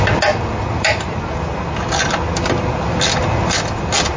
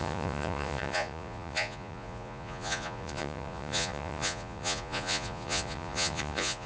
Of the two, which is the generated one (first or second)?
second